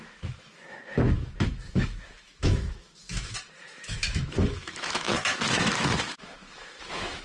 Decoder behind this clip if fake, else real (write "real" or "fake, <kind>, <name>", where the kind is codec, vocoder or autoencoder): fake, autoencoder, DAC-VAE